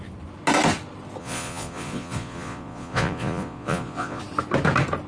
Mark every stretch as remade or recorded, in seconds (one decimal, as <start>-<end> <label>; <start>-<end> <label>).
0.0-1.2 recorded; 1.2-4.2 remade; 4.2-5.1 recorded

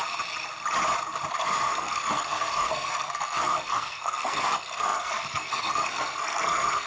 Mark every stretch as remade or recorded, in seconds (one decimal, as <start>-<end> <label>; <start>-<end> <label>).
0.0-1.3 recorded; 1.3-6.9 remade